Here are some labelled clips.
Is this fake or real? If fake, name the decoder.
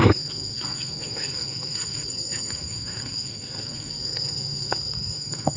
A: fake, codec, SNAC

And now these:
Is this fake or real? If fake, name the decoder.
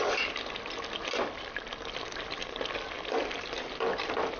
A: real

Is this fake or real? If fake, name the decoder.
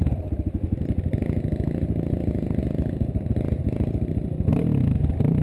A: real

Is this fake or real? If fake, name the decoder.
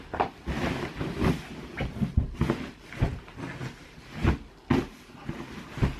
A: real